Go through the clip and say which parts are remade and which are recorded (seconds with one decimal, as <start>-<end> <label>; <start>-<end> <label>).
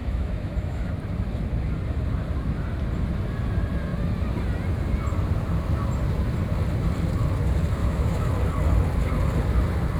0.0-0.9 remade; 0.9-7.8 recorded; 7.8-8.3 remade; 8.3-10.0 recorded